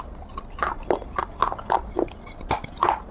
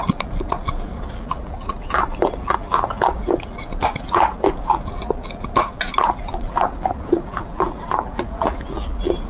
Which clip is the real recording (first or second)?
first